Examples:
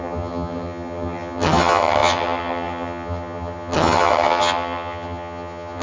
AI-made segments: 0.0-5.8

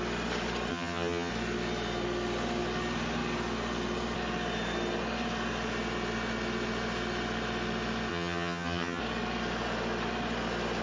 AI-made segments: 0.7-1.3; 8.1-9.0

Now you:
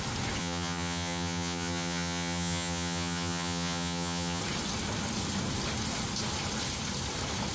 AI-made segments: 0.4-4.4

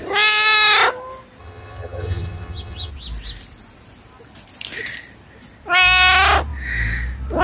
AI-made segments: 1.4-2.9

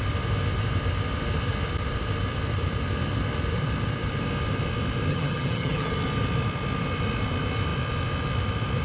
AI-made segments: 5.1-5.9

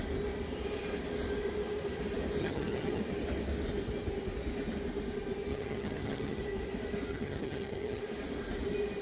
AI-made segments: 2.4-3.0; 5.5-6.4; 7.1-8.0